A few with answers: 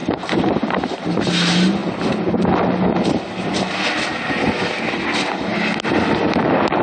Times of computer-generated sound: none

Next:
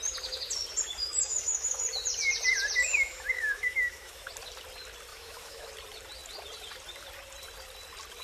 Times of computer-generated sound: 1.0-1.8; 2.8-4.3; 5.1-5.7